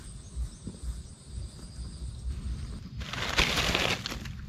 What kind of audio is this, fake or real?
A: real